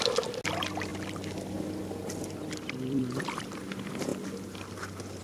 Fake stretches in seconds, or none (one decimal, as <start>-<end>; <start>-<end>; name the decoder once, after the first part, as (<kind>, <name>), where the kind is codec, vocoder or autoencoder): 0.9-3.2 (vocoder, BigVGAN v2)